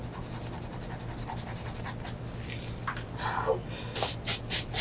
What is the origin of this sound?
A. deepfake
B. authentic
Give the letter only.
B